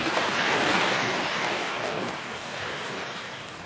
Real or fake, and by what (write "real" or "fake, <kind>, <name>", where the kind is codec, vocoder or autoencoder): fake, codec, DAC